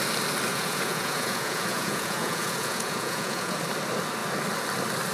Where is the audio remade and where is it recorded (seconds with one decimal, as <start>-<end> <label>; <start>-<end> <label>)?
0.0-0.5 recorded; 0.5-3.6 remade; 3.6-5.1 recorded